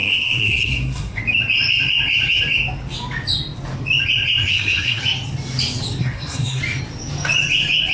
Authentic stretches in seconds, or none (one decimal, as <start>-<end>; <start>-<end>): 1.2-4.5; 5.0-6.0; 6.6-7.9